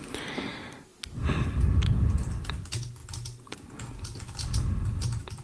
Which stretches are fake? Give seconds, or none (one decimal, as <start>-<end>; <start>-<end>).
none